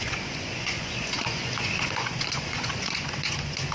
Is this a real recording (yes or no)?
no